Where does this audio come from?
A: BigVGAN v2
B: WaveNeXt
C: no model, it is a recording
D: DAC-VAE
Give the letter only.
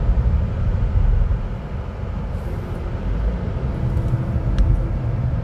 C